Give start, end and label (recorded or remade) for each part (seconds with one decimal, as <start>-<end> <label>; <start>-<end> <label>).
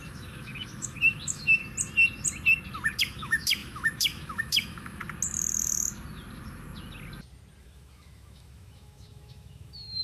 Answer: 0.0-1.6 remade; 1.6-3.0 recorded; 3.0-5.0 remade; 5.0-7.6 recorded; 7.6-10.0 remade